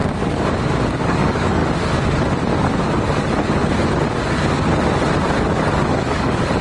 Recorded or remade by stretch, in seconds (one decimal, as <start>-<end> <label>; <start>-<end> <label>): 0.0-0.9 recorded; 0.9-1.6 remade; 1.6-5.6 recorded; 5.6-6.6 remade